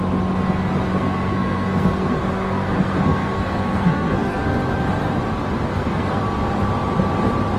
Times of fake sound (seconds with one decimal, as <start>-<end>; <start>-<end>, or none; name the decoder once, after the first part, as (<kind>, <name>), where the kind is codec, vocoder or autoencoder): 0.9-4.4 (codec, SNAC); 5.7-6.2